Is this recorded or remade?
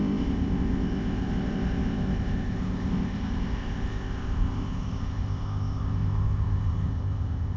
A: remade